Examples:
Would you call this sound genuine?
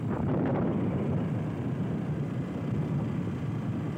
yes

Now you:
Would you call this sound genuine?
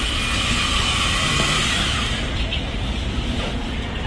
yes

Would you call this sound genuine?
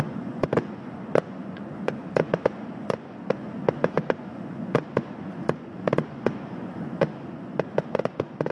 no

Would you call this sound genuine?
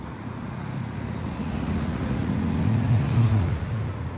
no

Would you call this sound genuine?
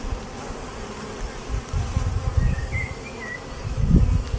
yes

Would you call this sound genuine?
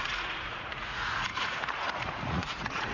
no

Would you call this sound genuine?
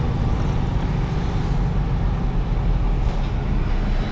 yes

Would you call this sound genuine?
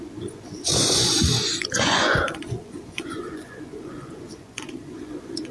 no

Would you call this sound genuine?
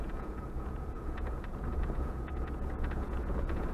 no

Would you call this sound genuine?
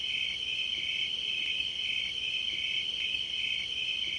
yes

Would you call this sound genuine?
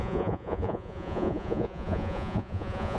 no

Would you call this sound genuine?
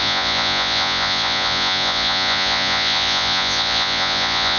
no